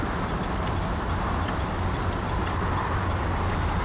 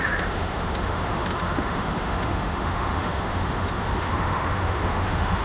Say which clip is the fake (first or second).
second